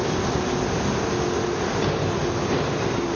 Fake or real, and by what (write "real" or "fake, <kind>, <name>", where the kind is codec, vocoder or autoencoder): real